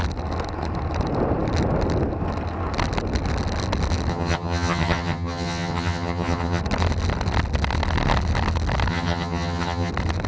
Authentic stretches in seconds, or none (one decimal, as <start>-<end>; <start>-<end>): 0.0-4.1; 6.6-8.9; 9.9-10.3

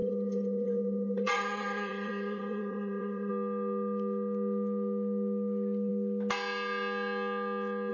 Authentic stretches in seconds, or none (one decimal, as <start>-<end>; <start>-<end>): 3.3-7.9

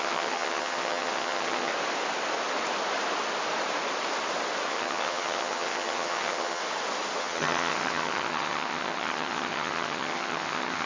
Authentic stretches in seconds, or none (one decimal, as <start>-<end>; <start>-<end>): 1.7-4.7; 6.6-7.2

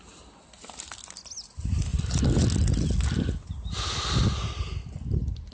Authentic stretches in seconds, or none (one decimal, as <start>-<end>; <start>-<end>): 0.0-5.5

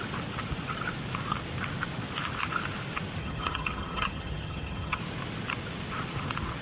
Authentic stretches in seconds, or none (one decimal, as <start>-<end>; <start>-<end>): 0.0-3.2; 5.0-6.6